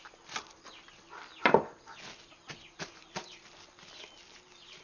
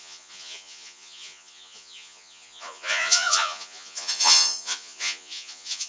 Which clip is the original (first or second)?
first